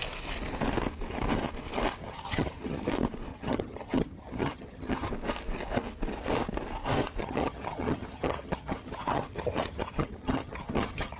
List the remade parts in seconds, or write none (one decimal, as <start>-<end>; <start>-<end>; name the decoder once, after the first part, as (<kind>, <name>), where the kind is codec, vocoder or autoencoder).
2.0-2.9 (vocoder, HiFi-GAN); 3.3-5.1; 7.2-11.2